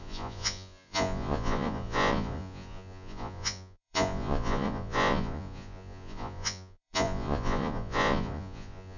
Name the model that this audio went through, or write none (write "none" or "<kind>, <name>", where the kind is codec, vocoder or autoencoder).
vocoder, Vocos